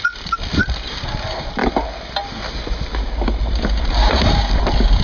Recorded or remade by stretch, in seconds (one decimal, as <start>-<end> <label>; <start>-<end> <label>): 0.0-5.0 recorded